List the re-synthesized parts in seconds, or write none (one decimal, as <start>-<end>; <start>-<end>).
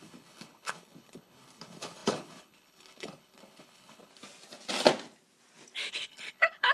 0.0-4.1; 5.9-6.7